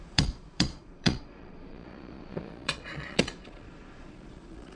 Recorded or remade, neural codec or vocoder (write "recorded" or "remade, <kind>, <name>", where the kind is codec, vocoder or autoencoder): remade, vocoder, Vocos